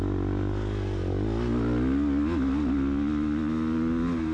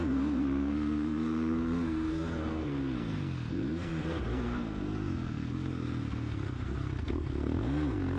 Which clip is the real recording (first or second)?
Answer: first